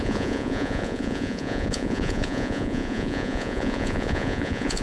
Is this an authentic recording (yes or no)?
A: no